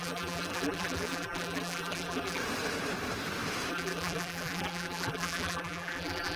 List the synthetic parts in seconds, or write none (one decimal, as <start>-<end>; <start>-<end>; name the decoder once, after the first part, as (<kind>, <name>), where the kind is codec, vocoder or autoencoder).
0.0-2.4 (vocoder, BigVGAN v2); 3.7-6.4